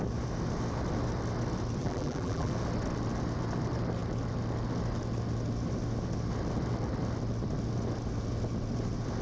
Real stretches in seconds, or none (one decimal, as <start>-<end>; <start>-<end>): 0.0-1.8; 2.5-9.2